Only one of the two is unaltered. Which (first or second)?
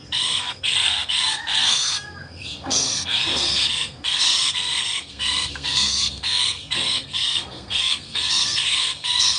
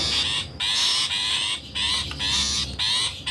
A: second